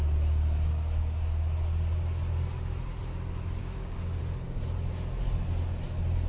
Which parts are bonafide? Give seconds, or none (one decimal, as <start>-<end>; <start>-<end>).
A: 0.0-3.6; 4.2-6.3